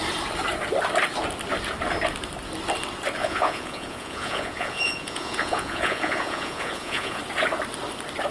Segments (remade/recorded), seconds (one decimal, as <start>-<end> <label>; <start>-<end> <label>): 0.0-3.2 recorded; 3.2-7.2 remade; 7.2-8.3 recorded